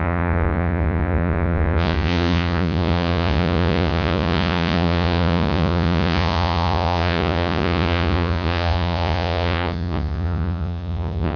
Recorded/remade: remade